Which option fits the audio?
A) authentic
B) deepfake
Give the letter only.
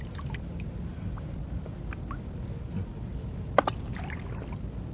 A